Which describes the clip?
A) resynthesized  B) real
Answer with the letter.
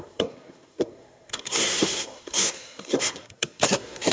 A